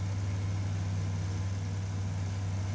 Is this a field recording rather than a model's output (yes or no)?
yes